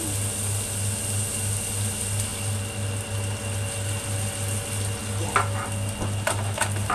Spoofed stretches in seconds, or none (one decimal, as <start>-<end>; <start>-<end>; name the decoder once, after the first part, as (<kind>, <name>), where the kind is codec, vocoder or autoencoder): none